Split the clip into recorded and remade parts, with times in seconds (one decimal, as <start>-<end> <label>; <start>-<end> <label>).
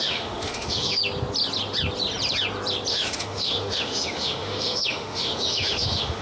0.0-1.0 remade; 1.0-2.9 recorded; 2.9-6.2 remade